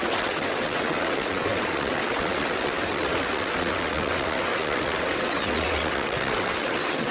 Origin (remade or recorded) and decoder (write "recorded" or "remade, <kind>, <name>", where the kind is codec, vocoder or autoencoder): remade, vocoder, WaveNeXt